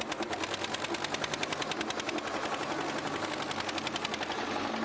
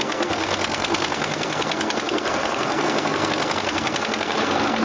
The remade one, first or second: second